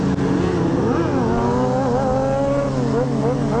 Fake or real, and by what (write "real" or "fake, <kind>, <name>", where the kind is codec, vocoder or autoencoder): real